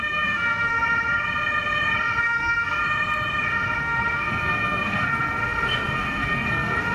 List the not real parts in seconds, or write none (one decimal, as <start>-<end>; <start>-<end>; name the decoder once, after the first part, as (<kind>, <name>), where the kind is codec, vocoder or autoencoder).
0.0-0.8 (codec, SNAC); 2.2-2.8; 3.8-6.9